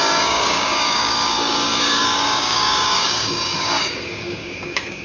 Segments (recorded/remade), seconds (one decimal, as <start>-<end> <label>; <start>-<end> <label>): 0.0-5.0 remade